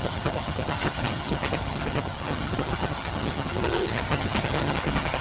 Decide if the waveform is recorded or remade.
remade